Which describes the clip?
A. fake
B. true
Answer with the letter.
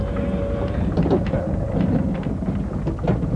B